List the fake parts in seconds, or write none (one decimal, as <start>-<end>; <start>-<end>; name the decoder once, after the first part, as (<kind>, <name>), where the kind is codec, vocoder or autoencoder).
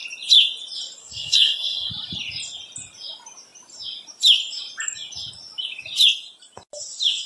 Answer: 1.0-1.9 (codec, SNAC)